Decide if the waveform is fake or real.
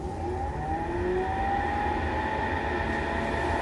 real